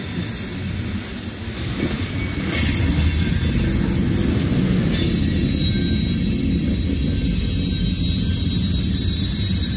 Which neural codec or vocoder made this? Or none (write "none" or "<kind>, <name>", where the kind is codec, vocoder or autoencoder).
none